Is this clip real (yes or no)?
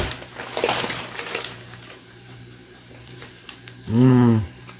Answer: no